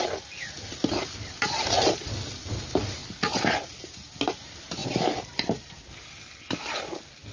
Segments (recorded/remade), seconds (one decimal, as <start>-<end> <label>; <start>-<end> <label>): 0.0-7.3 recorded

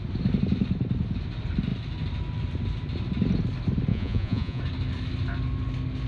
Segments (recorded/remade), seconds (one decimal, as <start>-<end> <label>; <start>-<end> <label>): 0.0-3.9 recorded; 3.9-4.6 remade; 4.6-6.1 recorded

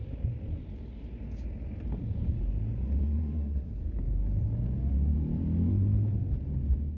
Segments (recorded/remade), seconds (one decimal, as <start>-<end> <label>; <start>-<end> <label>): 0.0-3.0 recorded; 3.0-3.7 remade; 3.7-7.0 recorded

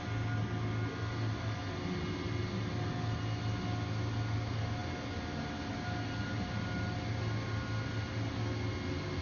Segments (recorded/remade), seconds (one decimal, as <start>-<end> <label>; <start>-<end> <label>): 0.0-9.2 recorded

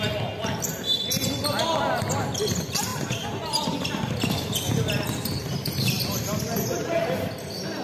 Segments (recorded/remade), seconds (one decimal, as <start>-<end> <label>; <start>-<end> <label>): 0.0-7.8 recorded

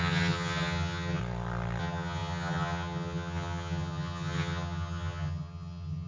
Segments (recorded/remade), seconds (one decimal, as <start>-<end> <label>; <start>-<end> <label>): 0.0-1.2 remade; 1.2-1.8 recorded; 1.8-6.1 remade